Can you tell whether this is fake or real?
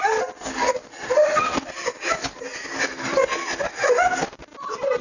real